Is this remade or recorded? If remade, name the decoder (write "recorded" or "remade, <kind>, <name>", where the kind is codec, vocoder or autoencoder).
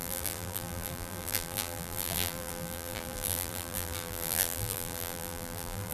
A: remade, vocoder, BigVGAN v2